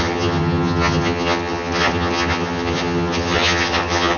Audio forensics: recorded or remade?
remade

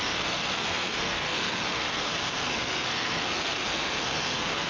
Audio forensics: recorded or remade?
remade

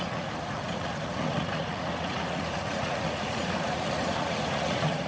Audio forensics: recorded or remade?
remade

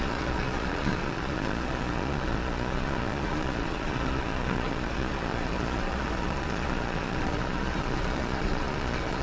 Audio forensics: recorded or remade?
remade